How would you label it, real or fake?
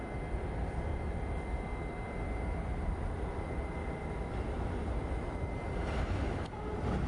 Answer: real